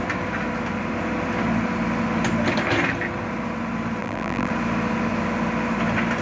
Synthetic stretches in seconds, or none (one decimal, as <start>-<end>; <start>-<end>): 4.0-4.5